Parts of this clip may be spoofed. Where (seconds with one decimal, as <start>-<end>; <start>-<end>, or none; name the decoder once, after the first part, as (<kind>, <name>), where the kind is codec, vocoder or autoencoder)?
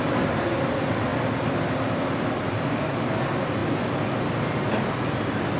none